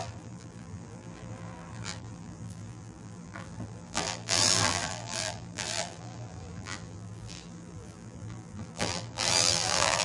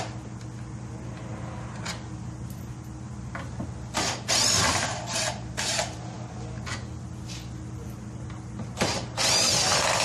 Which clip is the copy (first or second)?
first